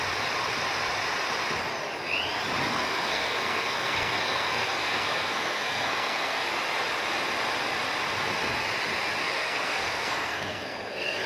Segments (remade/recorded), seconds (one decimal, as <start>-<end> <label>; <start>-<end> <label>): 0.0-2.7 recorded; 2.7-6.5 remade; 6.5-9.2 recorded; 9.2-11.3 remade